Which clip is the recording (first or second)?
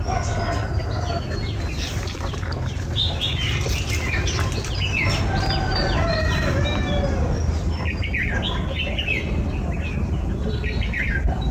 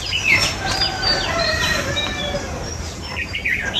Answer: first